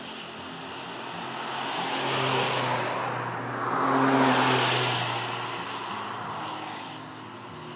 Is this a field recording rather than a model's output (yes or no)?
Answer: yes